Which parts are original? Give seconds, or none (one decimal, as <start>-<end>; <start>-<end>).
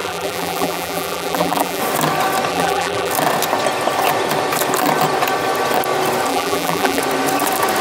1.8-2.5; 3.1-6.3; 7.0-7.8